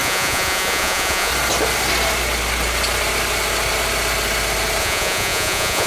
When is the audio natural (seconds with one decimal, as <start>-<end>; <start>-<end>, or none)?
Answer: 1.3-4.8